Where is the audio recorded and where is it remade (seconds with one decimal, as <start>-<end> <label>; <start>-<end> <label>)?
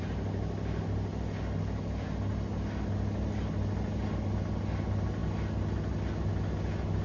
0.0-7.0 recorded